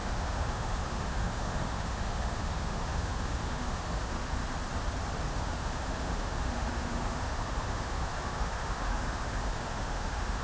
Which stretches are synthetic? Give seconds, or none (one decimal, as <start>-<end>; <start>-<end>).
0.0-4.4; 5.3-10.4